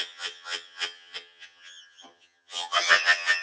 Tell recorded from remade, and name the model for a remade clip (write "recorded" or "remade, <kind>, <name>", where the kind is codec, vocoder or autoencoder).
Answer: remade, vocoder, HiFi-GAN